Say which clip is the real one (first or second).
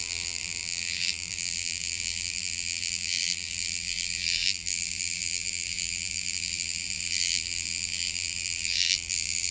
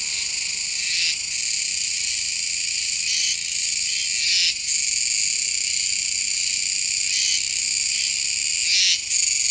second